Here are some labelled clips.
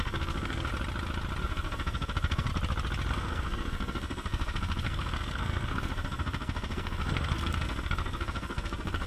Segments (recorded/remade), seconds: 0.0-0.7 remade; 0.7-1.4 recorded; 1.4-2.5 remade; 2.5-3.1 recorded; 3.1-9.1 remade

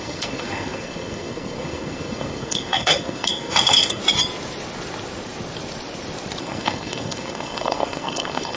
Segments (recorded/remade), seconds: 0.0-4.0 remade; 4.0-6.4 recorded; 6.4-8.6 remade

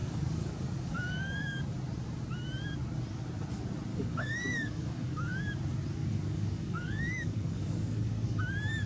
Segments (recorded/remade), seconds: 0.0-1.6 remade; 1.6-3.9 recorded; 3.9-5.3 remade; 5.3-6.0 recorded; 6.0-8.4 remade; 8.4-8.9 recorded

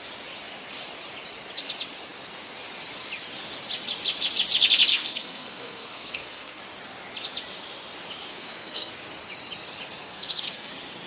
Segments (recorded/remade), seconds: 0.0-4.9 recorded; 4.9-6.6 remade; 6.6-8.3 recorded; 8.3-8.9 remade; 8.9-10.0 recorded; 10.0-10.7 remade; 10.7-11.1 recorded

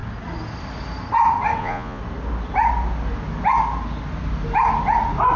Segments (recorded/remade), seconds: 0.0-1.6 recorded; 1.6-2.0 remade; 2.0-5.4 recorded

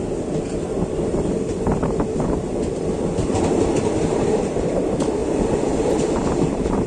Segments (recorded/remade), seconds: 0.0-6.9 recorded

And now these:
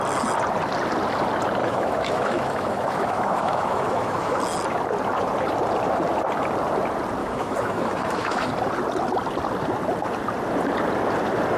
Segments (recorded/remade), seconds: 0.0-1.6 recorded; 1.6-4.4 remade; 4.4-7.2 recorded; 7.2-8.5 remade; 8.5-11.6 recorded

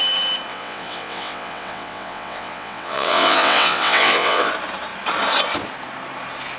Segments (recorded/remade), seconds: 0.0-0.5 recorded; 0.5-4.5 remade; 4.5-6.6 recorded